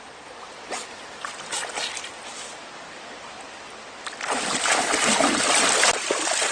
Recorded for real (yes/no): yes